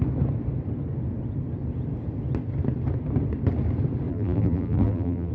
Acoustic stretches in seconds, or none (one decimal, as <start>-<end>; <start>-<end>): 0.0-4.1